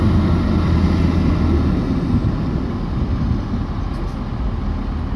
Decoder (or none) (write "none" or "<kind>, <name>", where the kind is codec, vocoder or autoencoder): none